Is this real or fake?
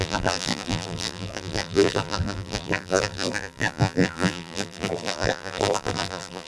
fake